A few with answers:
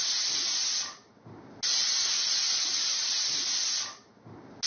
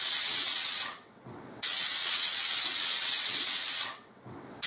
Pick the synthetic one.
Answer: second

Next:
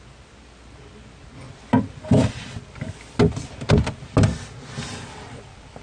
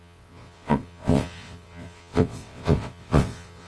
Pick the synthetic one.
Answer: second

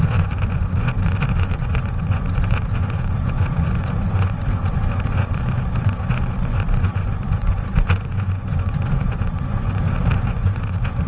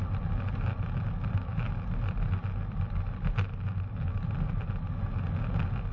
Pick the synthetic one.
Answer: first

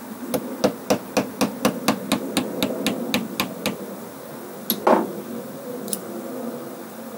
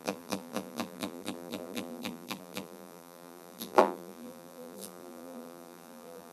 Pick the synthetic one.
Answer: second